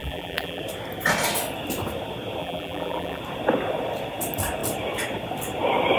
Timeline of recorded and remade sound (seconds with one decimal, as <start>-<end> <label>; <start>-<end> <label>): 0.0-0.6 remade; 0.6-2.4 recorded; 2.4-3.2 remade; 3.2-6.0 recorded